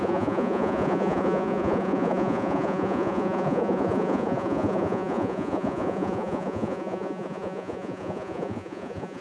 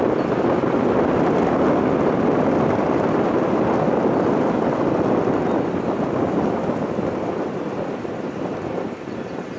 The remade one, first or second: first